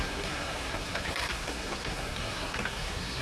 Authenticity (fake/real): fake